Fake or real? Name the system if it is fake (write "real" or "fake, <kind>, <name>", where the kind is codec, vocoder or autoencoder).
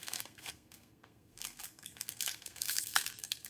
fake, codec, SNAC